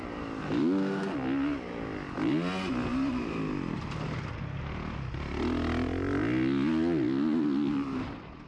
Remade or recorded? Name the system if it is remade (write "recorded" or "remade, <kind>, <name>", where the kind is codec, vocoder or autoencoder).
recorded